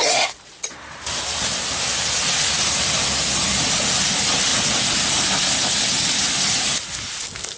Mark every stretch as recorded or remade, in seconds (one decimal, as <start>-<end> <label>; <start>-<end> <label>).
0.0-7.6 recorded